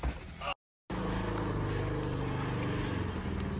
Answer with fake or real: real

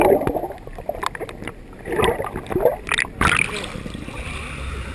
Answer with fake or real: real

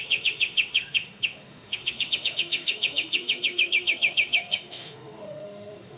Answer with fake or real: fake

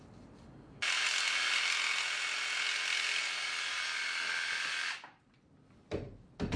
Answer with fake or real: real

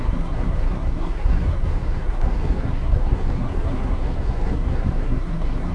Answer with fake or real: fake